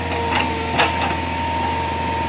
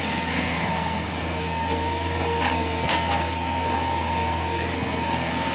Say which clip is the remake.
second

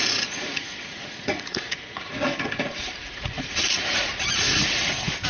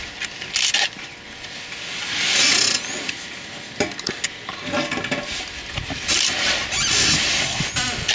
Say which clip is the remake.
first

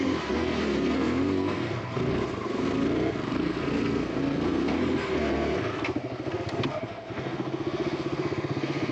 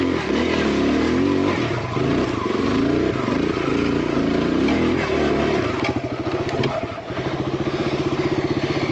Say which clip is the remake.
first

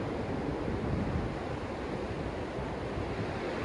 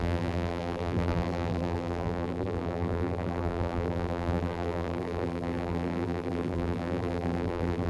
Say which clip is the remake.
second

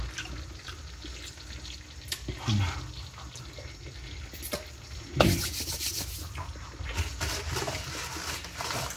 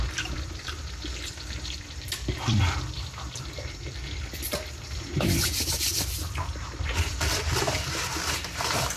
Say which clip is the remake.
second